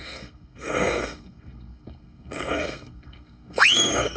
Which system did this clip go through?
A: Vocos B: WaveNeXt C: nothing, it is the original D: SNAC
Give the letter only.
D